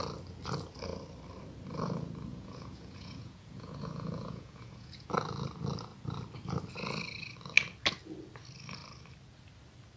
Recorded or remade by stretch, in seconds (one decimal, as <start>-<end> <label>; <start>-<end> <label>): 0.0-2.3 recorded; 2.3-5.1 remade; 5.1-10.0 recorded